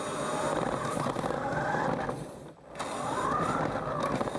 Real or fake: real